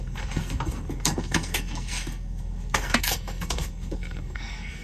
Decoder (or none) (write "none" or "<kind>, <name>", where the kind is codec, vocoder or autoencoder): codec, SNAC